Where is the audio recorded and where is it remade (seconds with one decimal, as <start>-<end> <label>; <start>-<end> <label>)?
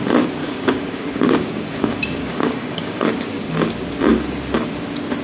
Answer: 0.0-0.4 recorded; 0.4-3.5 remade; 3.5-5.2 recorded